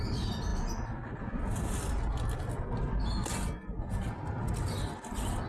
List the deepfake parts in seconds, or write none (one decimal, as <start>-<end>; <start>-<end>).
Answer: none